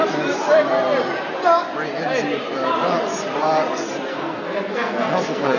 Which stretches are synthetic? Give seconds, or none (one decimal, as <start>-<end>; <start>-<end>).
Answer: 4.1-5.6